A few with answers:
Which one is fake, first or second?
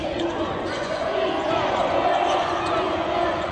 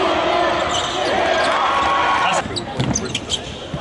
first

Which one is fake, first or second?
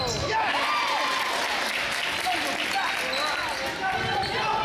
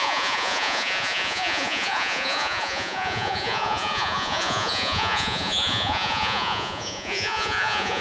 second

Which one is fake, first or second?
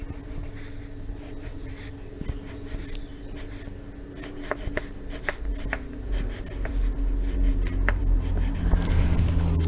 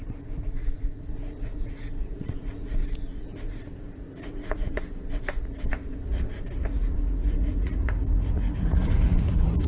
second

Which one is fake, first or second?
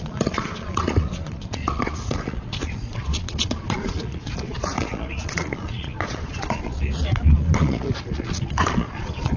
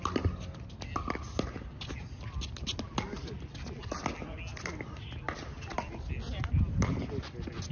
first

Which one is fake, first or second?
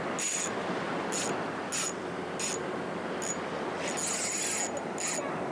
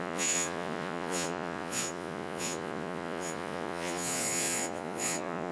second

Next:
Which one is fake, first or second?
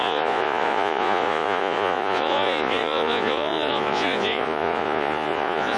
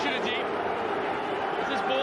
first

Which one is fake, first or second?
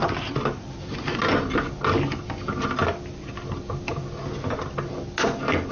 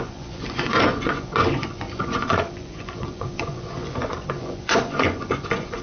second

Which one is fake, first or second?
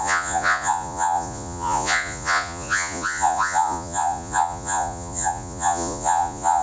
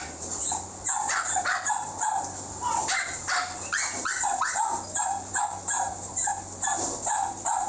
first